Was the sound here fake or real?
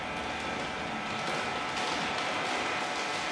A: real